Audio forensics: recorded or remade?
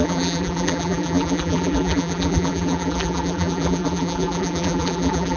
remade